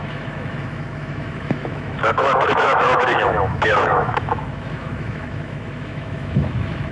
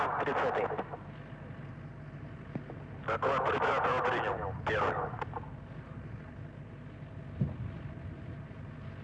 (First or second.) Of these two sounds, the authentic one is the second